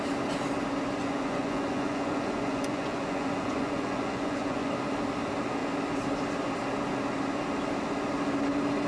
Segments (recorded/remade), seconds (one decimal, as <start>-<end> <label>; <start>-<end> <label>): 0.0-1.0 recorded; 1.0-4.7 remade; 4.7-8.9 recorded